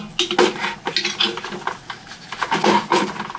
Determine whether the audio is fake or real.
real